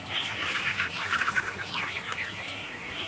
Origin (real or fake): fake